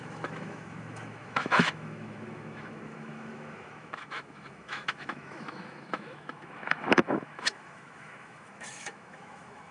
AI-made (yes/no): yes